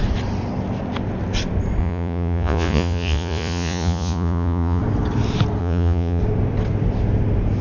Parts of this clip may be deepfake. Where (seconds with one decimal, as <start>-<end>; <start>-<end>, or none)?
1.8-4.8; 5.6-6.2